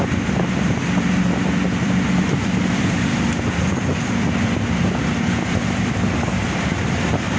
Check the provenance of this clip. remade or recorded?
remade